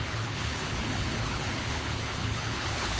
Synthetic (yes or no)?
yes